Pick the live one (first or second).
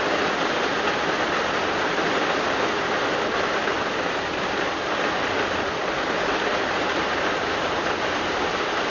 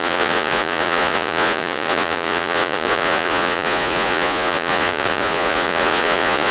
first